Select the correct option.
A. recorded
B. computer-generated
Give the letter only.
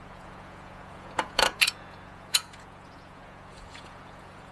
B